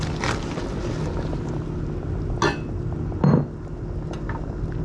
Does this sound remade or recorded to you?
recorded